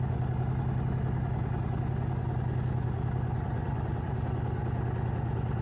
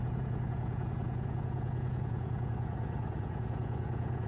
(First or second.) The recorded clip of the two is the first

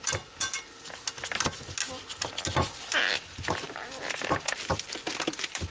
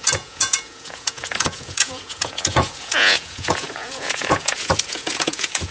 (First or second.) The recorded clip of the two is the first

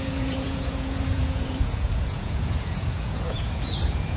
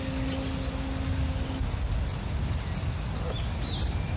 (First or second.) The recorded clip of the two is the second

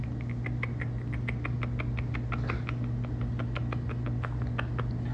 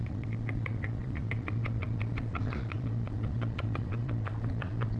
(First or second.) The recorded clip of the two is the first